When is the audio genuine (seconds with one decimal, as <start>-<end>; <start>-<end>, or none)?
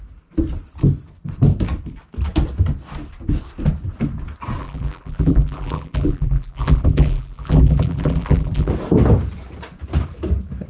0.0-4.6; 8.7-10.7